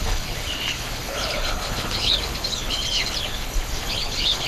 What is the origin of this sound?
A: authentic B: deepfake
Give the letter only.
B